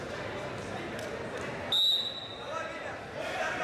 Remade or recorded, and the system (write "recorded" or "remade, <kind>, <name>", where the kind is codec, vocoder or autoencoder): recorded